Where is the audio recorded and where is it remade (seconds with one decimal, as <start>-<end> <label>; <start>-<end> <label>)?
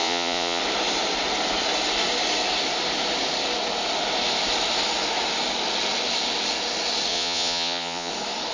0.0-0.6 remade; 0.6-7.1 recorded; 7.1-8.1 remade; 8.1-8.5 recorded